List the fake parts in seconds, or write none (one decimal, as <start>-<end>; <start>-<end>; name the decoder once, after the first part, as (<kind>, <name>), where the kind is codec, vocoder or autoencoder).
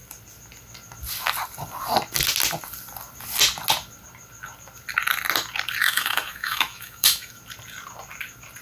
5.8-7.4 (autoencoder, DAC-VAE)